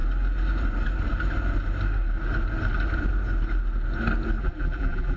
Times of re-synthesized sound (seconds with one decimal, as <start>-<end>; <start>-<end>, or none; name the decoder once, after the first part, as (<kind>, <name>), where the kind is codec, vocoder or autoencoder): 4.4-5.2 (vocoder, BigVGAN v2)